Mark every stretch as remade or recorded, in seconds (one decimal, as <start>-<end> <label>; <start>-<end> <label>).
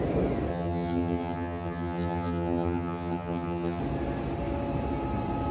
0.0-0.5 recorded; 0.5-3.8 remade; 3.8-5.5 recorded